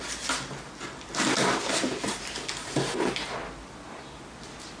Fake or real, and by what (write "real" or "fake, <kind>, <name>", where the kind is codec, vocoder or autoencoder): real